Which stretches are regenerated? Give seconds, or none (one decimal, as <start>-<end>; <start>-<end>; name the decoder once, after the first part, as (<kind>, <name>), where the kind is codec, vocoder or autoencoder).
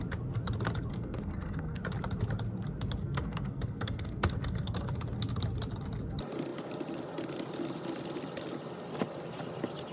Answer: 0.9-1.8 (codec, SNAC); 3.0-5.0